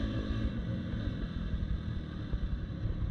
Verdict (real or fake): real